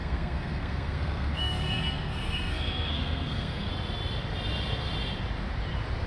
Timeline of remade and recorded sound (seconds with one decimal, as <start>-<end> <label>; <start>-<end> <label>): 0.0-3.7 remade; 3.7-6.1 recorded